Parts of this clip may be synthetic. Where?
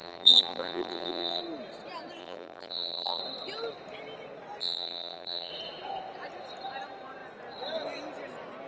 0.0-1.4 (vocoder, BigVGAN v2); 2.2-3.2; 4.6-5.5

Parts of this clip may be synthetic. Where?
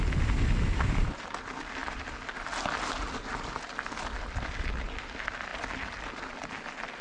none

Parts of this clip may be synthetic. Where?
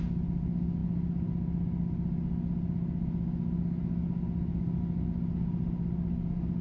none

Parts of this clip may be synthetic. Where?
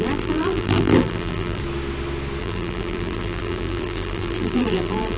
0.0-1.6 (vocoder, BigVGAN v2); 2.4-5.2